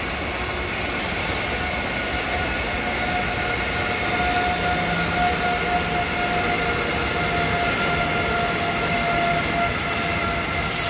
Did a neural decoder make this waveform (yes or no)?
no